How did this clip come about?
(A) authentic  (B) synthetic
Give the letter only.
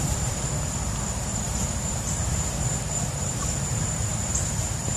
B